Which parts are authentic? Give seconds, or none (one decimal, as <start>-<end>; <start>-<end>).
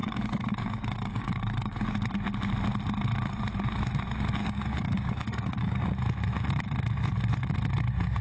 1.9-4.4; 5.9-8.2